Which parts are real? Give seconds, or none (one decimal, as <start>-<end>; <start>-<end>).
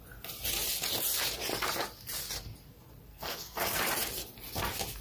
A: 0.0-3.1; 3.8-5.0